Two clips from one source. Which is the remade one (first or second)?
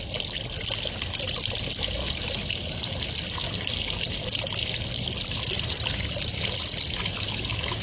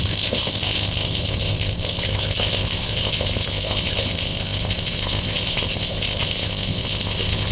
second